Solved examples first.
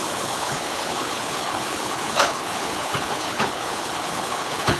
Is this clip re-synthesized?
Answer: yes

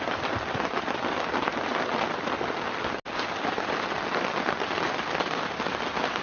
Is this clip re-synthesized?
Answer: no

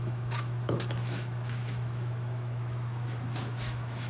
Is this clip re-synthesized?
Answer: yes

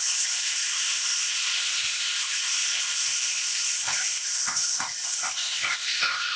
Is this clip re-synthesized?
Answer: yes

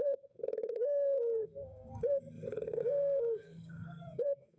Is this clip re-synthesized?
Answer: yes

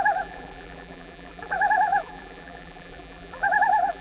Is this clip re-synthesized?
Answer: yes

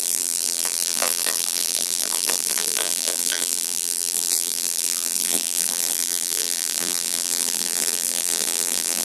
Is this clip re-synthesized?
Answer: yes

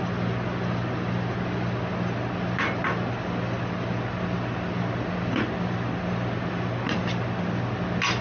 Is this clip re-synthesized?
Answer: no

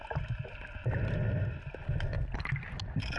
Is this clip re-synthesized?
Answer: no